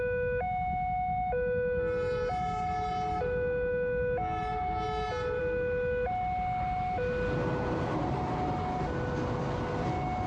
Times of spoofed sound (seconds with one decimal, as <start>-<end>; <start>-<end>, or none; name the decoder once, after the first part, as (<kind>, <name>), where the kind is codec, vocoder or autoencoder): none